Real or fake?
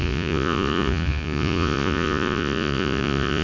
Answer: fake